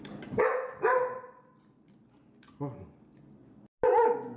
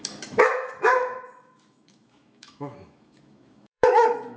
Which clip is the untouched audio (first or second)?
first